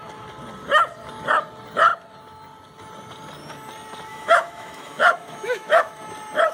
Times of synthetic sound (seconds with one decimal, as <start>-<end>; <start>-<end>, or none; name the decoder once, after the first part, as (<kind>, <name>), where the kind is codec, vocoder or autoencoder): 4.1-6.1 (autoencoder, DAC-VAE)